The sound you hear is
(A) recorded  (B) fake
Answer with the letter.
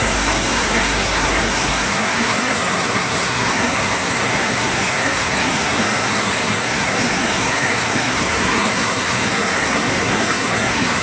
B